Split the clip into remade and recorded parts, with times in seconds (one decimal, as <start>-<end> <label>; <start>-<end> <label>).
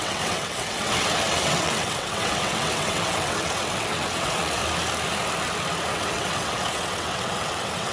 0.0-4.6 remade; 4.6-5.9 recorded; 5.9-7.9 remade